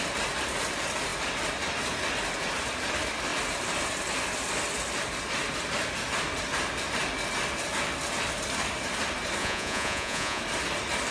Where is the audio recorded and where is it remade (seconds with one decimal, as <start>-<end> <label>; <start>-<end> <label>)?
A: 0.0-9.4 recorded; 9.4-10.4 remade; 10.4-11.1 recorded